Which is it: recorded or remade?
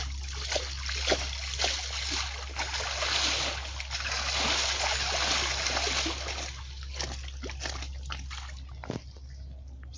recorded